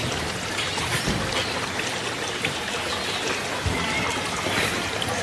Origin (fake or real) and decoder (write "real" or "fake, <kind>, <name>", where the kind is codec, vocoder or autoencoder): real